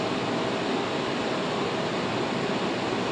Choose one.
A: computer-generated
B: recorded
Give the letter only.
B